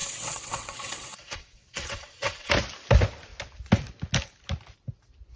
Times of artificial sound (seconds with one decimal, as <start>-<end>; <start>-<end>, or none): 0.0-2.5